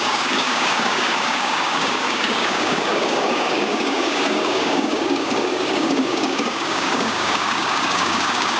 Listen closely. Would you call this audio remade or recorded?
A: remade